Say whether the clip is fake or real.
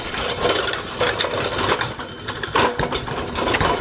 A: real